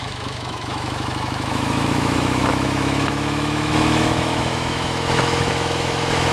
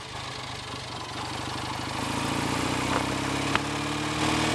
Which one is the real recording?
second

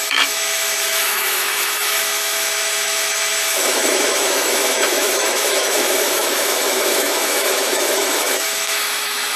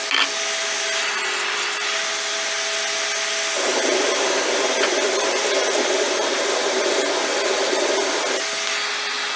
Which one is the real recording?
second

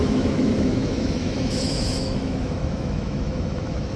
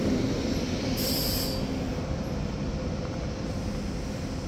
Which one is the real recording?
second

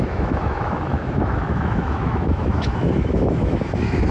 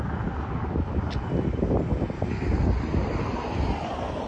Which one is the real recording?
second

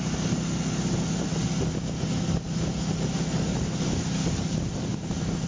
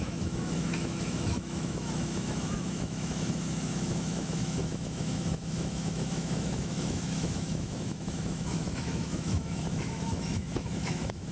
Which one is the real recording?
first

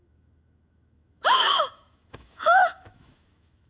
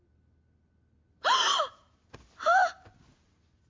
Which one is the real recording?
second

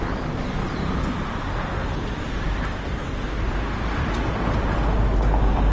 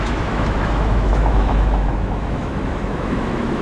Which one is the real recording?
first